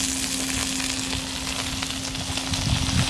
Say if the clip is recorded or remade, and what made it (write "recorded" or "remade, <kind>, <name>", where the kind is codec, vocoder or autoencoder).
recorded